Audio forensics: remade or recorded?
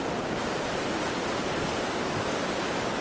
recorded